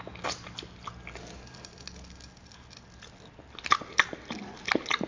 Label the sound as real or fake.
real